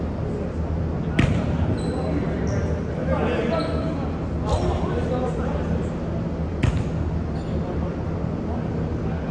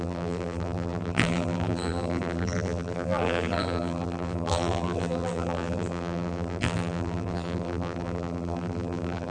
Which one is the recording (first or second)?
first